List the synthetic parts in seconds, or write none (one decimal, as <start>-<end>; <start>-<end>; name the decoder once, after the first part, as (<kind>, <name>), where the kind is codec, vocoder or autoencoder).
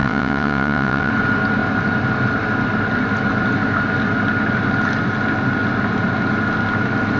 0.0-1.1 (vocoder, WaveNeXt)